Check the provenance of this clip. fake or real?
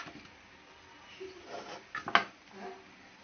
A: real